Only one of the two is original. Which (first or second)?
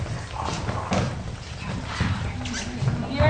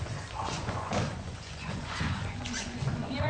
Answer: first